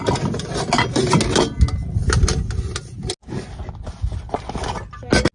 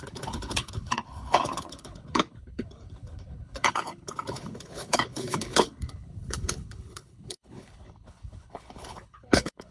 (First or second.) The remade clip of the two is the second